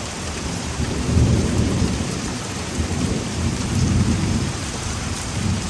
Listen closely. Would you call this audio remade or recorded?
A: remade